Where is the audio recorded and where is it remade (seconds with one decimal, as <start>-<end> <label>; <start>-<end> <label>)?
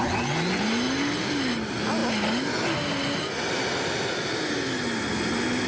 0.0-5.7 recorded